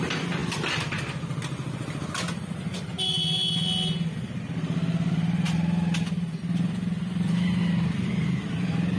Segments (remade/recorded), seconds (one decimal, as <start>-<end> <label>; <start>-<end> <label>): 0.0-9.0 recorded